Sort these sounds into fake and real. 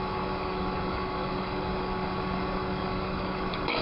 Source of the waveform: fake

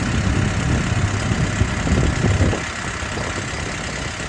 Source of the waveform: real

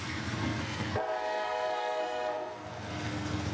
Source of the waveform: fake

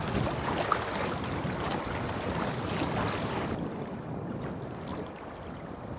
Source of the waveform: real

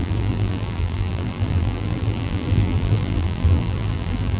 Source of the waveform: fake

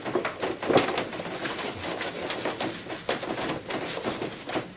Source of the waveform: real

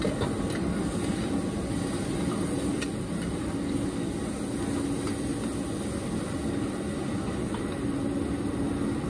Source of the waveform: real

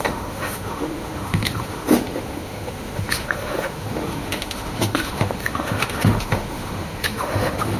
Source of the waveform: fake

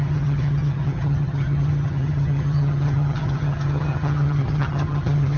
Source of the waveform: fake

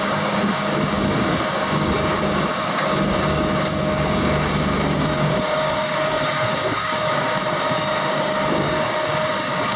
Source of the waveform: fake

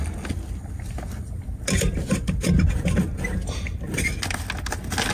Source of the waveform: real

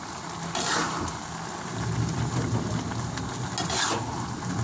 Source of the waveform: real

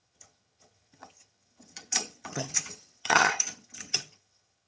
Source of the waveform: fake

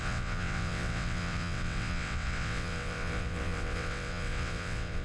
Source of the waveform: fake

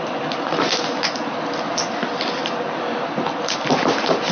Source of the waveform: real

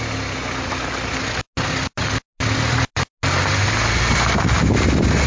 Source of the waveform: real